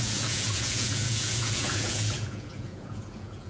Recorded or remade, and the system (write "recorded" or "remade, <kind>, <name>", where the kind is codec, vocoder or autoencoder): remade, vocoder, Vocos